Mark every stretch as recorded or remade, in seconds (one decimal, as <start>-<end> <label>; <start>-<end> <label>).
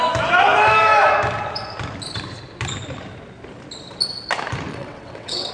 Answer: 0.0-4.7 recorded; 4.7-5.5 remade